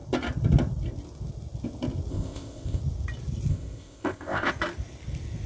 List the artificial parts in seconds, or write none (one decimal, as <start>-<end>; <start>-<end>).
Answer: 2.1-2.8; 3.5-4.5

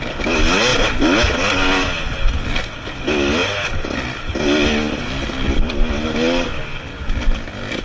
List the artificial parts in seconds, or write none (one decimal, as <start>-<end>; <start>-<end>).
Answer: none